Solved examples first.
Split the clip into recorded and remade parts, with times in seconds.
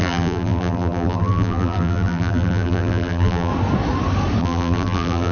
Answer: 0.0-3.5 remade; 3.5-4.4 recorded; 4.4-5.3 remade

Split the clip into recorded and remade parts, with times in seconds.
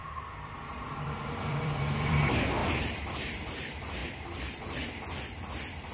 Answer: 0.0-2.2 remade; 2.2-4.0 recorded; 4.0-4.6 remade; 4.6-5.9 recorded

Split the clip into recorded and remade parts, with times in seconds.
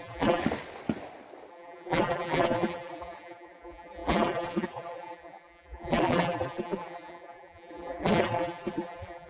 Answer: 0.0-0.4 remade; 0.4-1.5 recorded; 1.5-9.3 remade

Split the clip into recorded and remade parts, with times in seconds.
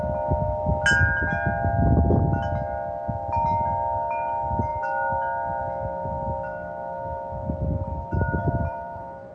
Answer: 0.0-8.4 recorded; 8.4-9.3 remade